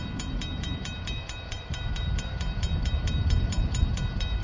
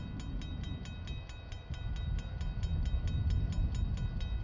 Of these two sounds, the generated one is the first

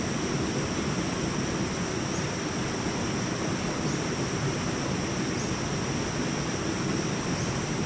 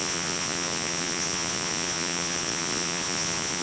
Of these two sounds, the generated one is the second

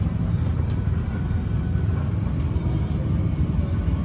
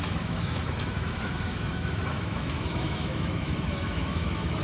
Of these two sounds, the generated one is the second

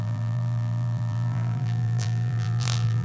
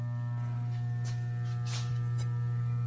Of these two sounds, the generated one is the first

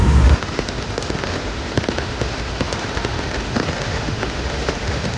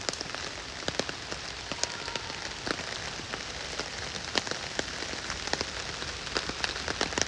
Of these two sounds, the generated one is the first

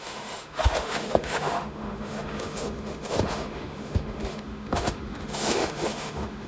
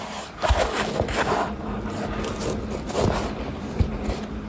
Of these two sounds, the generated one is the first